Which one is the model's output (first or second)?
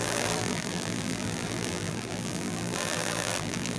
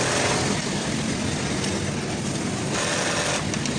first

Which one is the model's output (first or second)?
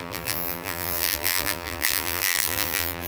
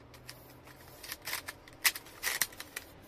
first